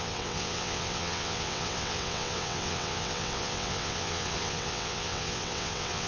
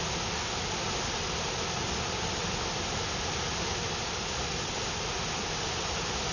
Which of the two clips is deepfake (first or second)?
first